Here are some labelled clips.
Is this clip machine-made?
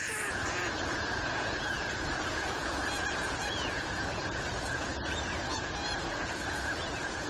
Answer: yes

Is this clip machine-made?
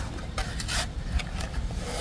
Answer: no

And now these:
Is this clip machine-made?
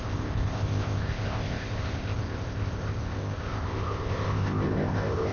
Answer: yes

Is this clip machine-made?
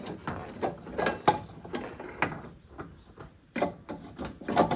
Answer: no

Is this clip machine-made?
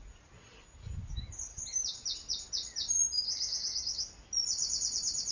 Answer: no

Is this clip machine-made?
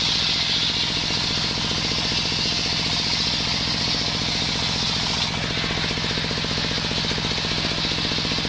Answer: no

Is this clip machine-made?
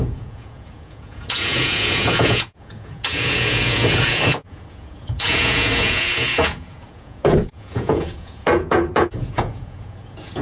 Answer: yes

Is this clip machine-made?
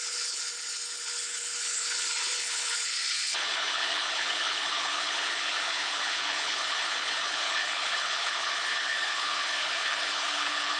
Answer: yes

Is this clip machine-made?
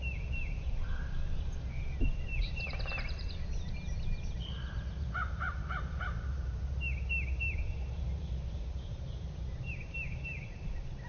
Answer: yes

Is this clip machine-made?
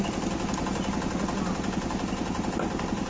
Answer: no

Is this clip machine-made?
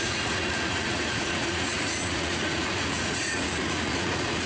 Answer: yes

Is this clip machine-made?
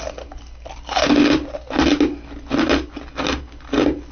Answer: no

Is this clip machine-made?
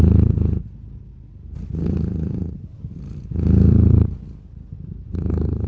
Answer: no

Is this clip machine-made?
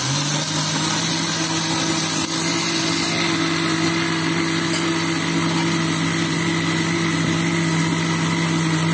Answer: no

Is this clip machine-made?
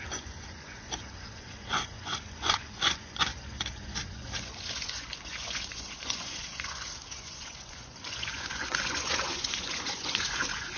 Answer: yes